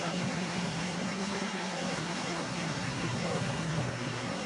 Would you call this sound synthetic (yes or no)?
yes